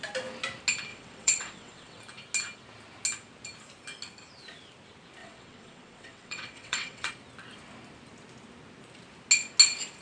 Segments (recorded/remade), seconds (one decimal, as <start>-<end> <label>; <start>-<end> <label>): 0.0-0.9 recorded; 0.9-2.0 remade; 2.0-5.2 recorded; 5.2-7.1 remade; 7.1-10.0 recorded